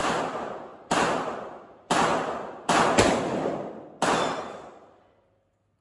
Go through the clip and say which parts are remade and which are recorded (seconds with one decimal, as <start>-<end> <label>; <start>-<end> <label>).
0.0-5.8 recorded